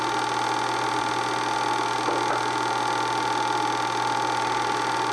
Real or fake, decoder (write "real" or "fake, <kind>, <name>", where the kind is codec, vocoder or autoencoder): real